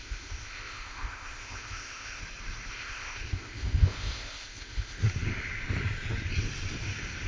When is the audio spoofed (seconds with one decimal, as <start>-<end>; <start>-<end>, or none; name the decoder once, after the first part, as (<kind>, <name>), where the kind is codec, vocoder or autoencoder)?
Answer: 0.0-2.2 (codec, ZipCodec); 2.7-5.0